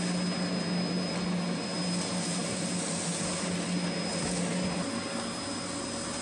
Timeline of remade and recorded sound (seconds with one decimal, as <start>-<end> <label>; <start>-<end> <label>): 0.0-6.2 recorded